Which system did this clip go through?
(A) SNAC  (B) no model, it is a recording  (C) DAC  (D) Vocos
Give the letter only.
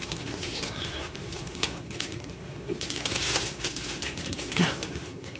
A